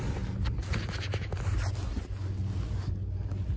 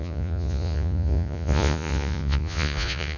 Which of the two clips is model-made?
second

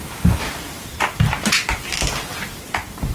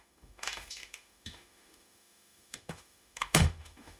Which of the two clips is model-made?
second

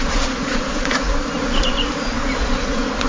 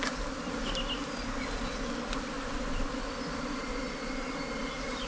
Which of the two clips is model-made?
first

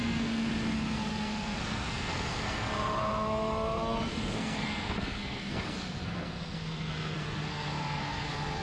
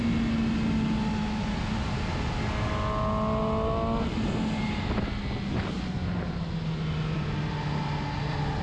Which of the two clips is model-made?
first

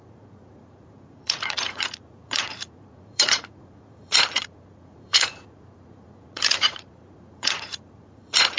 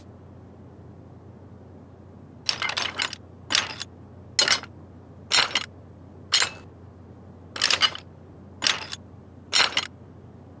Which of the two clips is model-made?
first